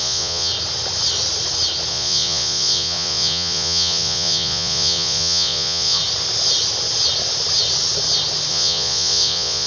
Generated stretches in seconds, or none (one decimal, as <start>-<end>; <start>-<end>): 0.0-0.5; 1.9-6.0; 8.5-9.7